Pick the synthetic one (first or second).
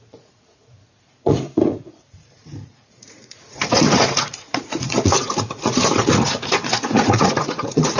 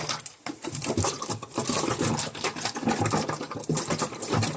first